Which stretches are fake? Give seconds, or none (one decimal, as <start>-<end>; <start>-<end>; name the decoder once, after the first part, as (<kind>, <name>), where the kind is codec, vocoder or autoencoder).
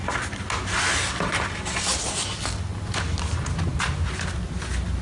none